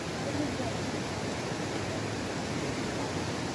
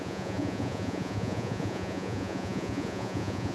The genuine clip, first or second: first